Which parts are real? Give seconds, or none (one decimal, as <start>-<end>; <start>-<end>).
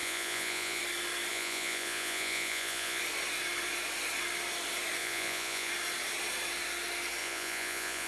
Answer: 0.8-1.3; 3.0-5.0; 5.7-7.2